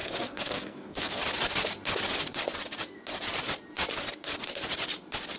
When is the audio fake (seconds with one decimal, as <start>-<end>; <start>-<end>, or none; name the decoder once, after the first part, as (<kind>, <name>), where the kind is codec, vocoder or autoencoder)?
0.0-1.2 (codec, SNAC)